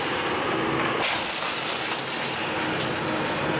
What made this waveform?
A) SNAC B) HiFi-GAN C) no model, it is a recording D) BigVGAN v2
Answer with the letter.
C